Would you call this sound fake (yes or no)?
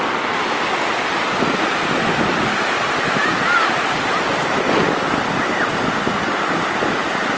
no